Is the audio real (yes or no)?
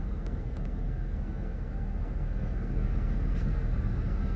no